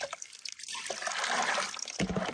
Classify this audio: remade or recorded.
recorded